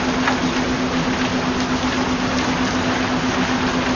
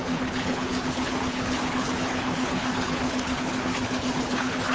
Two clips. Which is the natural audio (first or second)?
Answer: first